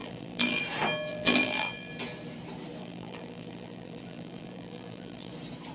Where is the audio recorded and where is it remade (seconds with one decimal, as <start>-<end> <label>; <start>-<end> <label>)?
0.0-0.6 remade; 0.6-1.1 recorded; 1.1-1.9 remade; 1.9-2.8 recorded; 2.8-5.3 remade; 5.3-5.7 recorded